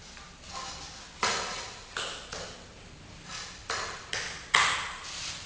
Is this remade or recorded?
recorded